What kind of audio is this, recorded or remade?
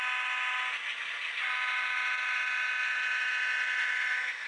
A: recorded